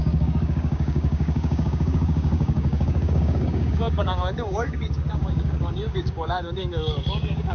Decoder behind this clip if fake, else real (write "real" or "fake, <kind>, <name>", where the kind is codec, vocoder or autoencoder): fake, codec, DAC